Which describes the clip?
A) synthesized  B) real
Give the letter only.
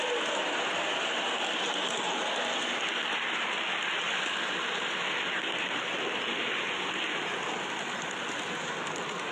B